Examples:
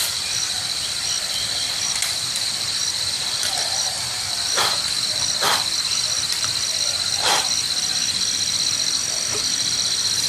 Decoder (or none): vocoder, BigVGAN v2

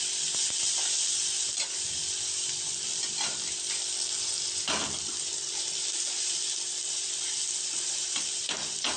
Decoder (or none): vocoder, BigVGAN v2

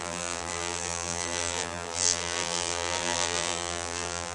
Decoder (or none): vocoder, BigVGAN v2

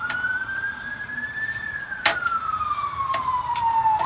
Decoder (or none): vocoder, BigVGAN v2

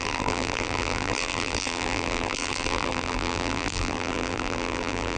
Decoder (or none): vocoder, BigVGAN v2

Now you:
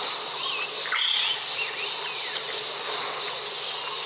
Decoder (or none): none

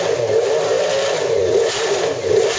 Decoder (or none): none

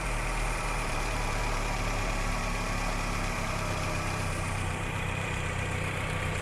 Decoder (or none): vocoder, BigVGAN v2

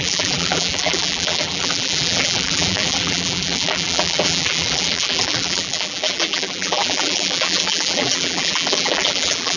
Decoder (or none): vocoder, BigVGAN v2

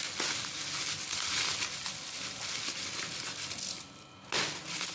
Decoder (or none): none